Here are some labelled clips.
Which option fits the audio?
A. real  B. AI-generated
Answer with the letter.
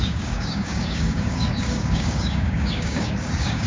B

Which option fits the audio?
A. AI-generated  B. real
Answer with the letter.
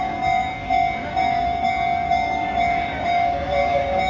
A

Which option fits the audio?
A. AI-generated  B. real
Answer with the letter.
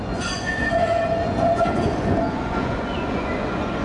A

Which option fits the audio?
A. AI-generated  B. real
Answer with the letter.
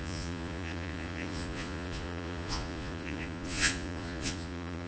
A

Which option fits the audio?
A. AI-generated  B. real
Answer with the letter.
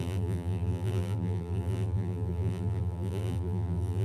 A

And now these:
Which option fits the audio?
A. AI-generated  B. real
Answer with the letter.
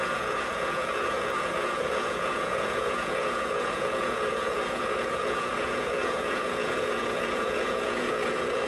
A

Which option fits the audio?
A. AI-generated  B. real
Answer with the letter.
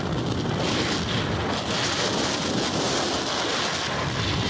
B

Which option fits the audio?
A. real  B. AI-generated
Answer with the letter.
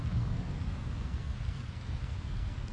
B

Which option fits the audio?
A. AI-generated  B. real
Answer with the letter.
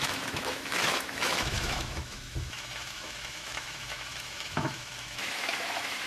A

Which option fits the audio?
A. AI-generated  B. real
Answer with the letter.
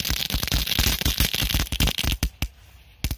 B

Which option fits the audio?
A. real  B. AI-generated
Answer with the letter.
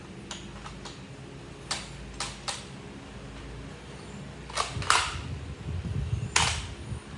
A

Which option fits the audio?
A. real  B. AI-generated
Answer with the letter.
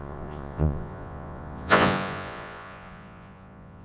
B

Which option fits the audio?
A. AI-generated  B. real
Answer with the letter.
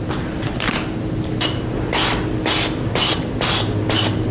B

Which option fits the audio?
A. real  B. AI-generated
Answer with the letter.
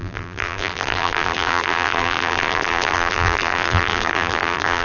B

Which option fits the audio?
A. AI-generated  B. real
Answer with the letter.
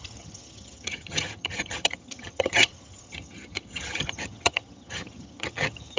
A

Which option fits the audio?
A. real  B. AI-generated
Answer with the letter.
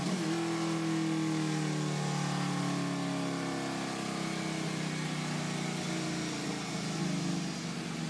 A